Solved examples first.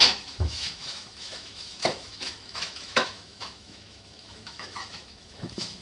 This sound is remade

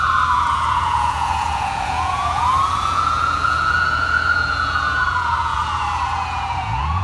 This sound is remade